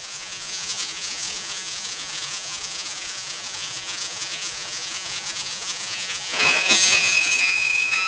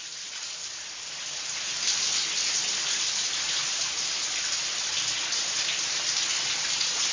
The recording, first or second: second